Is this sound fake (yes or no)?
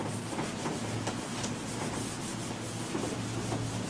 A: no